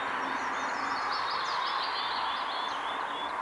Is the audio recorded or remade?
recorded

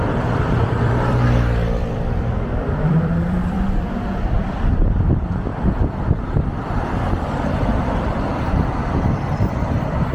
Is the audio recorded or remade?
remade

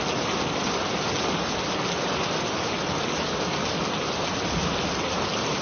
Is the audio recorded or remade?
recorded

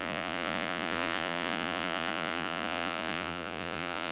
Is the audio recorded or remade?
remade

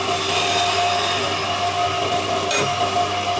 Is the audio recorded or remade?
recorded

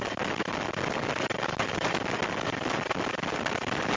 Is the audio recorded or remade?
recorded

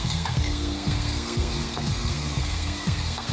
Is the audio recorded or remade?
remade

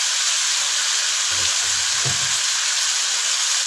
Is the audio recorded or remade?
remade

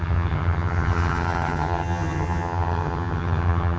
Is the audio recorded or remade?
remade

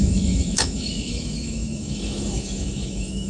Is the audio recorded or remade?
remade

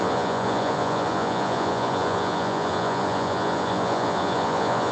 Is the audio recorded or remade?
remade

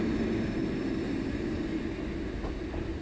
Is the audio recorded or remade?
recorded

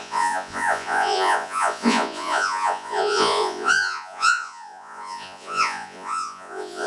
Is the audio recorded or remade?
remade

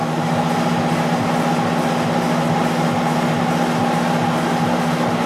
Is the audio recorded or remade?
recorded